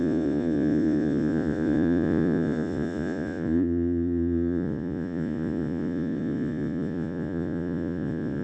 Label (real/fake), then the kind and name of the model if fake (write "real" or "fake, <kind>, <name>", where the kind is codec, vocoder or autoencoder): fake, vocoder, Vocos